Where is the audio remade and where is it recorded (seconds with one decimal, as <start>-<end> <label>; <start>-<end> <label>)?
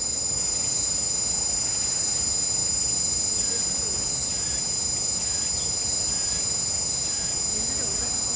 0.0-8.4 recorded